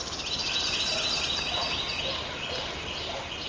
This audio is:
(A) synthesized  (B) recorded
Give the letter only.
B